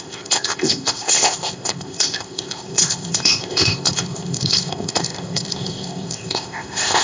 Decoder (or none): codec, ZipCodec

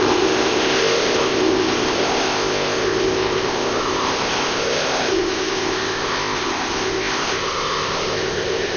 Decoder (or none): codec, ZipCodec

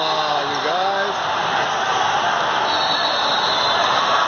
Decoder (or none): none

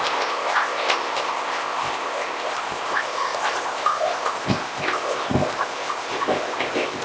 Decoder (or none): codec, ZipCodec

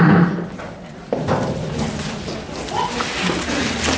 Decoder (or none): none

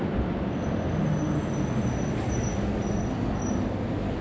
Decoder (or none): none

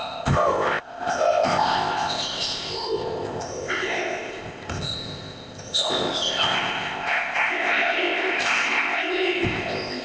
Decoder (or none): codec, ZipCodec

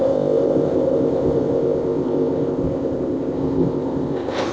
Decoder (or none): codec, ZipCodec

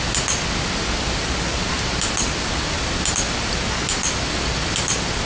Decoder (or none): none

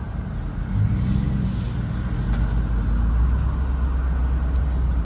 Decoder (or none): none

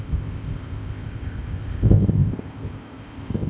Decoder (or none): codec, ZipCodec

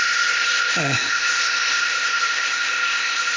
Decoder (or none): codec, ZipCodec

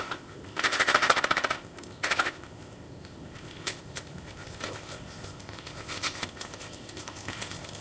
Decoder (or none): codec, ZipCodec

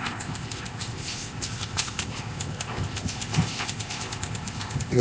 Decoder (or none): codec, ZipCodec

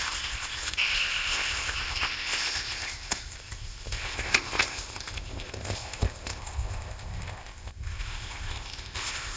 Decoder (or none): codec, ZipCodec